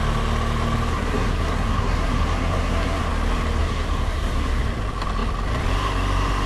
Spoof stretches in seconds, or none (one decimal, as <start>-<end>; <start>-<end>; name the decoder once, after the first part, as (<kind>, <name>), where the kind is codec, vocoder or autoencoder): 0.9-3.1 (codec, SNAC); 3.6-4.6